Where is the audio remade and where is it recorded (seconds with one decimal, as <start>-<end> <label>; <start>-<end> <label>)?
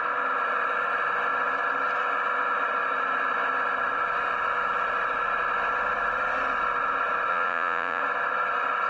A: 0.0-7.3 recorded; 7.3-8.0 remade; 8.0-8.9 recorded